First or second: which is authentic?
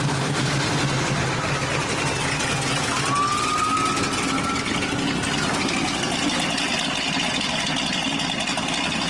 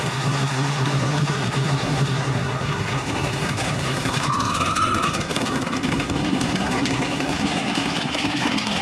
first